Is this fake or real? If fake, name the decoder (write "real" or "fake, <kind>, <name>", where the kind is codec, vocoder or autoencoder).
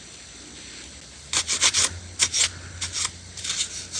real